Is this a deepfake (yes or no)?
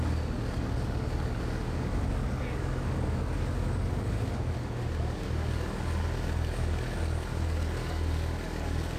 yes